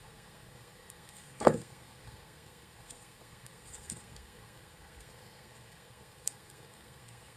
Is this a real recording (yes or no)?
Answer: no